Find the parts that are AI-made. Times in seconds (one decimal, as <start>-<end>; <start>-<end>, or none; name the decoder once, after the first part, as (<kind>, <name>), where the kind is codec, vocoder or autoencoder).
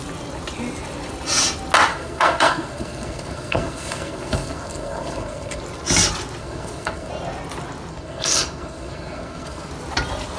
1.9-5.6 (codec, SNAC); 6.4-7.1; 7.9-9.7